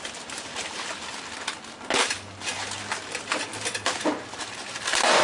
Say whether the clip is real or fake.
real